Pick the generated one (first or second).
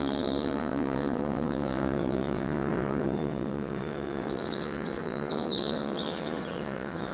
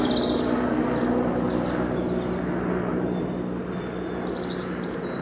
first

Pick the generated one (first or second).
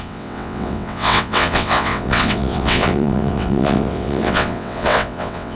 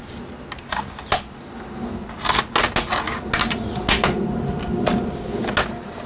first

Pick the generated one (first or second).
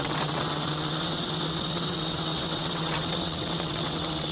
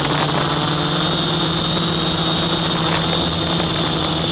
first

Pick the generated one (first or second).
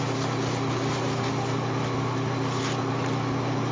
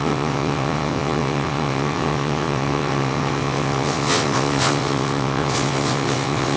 second